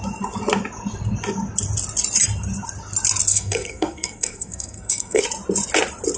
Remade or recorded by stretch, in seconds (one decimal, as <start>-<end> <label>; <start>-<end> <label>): 0.0-3.3 recorded; 3.3-5.2 remade; 5.2-6.2 recorded

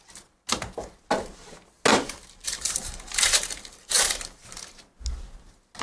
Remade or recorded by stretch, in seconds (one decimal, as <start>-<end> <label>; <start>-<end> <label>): 0.0-1.9 recorded; 1.9-4.8 remade; 4.8-5.8 recorded

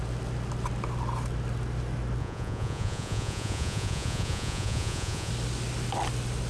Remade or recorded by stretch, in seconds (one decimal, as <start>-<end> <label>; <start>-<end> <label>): 0.0-2.2 recorded; 2.2-5.3 remade; 5.3-6.5 recorded

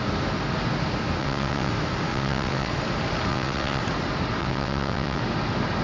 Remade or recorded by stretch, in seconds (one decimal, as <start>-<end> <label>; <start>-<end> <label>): 0.0-1.2 recorded; 1.2-1.7 remade; 1.7-2.1 recorded; 2.1-2.7 remade; 2.7-3.3 recorded; 3.3-3.8 remade; 3.8-4.4 recorded; 4.4-5.2 remade; 5.2-5.8 recorded

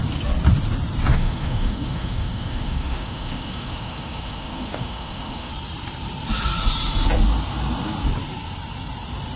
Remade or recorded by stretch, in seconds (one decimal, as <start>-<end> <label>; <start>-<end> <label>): 0.0-1.1 recorded; 1.1-5.5 remade; 5.5-9.4 recorded

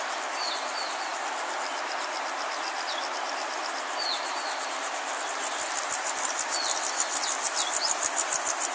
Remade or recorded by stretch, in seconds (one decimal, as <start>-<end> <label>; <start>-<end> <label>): 0.0-1.1 remade; 1.1-5.8 recorded; 5.8-8.7 remade